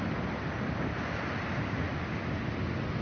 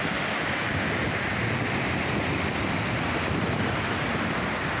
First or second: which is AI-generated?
second